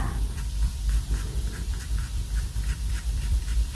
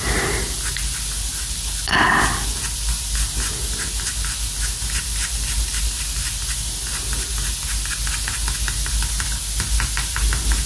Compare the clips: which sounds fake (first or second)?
first